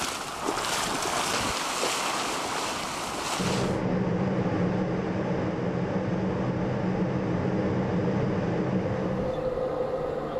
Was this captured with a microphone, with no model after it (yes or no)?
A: yes